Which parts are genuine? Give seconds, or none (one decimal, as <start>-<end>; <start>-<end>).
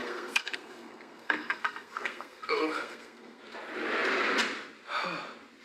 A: 3.4-5.6